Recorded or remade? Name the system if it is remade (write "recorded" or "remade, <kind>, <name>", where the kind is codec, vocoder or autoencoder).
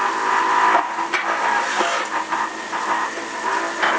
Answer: recorded